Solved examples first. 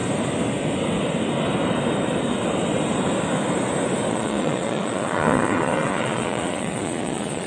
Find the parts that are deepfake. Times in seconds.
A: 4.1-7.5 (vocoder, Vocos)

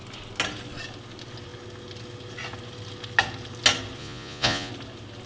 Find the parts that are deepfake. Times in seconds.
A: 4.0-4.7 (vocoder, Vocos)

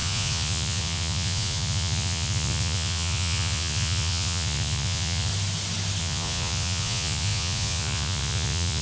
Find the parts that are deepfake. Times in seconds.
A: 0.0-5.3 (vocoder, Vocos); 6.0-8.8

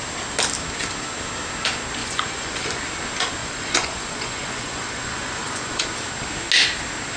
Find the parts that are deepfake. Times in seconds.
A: 2.0-2.8 (vocoder, Vocos); 3.4-5.8

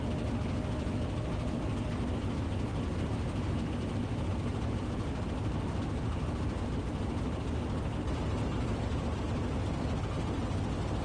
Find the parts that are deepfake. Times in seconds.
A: none

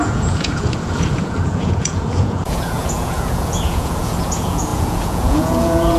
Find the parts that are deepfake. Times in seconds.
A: 0.0-6.0 (vocoder, Vocos)